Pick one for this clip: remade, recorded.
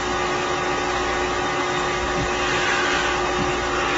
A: recorded